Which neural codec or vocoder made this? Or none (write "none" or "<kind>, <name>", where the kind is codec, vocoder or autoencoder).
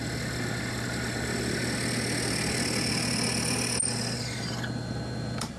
none